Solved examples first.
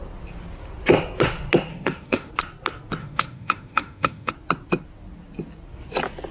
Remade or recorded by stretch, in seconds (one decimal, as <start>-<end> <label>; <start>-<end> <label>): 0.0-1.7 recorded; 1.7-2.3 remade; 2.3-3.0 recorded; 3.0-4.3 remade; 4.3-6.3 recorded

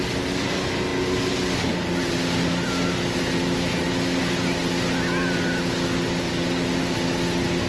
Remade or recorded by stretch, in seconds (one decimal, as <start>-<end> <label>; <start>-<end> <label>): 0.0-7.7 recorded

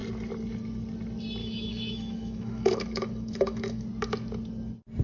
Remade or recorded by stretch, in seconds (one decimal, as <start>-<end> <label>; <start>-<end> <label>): 0.0-1.4 recorded; 1.4-3.8 remade; 3.8-5.0 recorded

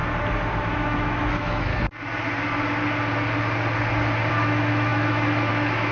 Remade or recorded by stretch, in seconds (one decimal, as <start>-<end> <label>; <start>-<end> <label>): 0.0-0.6 recorded; 0.6-1.7 remade; 1.7-4.3 recorded; 4.3-5.9 remade

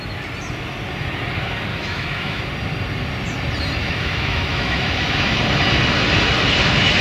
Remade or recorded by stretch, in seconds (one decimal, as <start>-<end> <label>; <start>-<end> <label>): 0.0-1.7 recorded; 1.7-2.4 remade; 2.4-3.8 recorded; 3.8-5.4 remade; 5.4-7.0 recorded